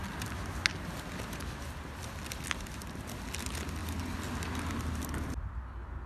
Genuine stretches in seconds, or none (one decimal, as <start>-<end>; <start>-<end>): 0.0-6.1